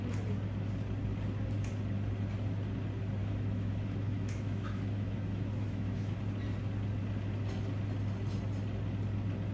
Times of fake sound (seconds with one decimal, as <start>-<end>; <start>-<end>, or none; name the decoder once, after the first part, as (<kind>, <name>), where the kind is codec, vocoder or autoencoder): 3.2-6.2 (autoencoder, DAC-VAE)